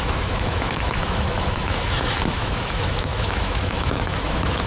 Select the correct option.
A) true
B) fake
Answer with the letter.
B